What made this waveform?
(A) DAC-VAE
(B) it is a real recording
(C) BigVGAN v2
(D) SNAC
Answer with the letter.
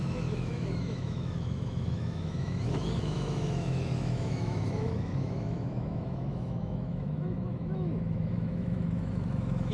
A